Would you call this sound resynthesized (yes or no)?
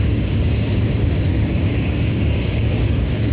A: yes